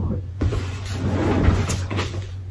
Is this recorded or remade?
remade